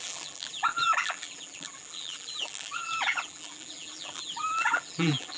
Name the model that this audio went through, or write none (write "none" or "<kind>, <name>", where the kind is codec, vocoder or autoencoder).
vocoder, BigVGAN v2